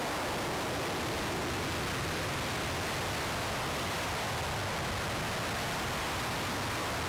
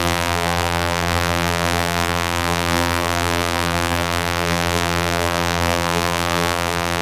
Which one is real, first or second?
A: first